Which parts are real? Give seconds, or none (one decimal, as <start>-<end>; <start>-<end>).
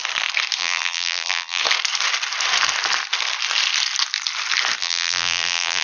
0.0-0.6; 1.6-4.8